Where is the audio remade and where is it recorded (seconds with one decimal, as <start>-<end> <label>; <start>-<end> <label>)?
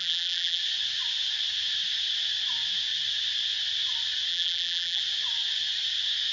0.0-0.6 remade; 0.6-4.3 recorded; 4.3-5.0 remade; 5.0-6.3 recorded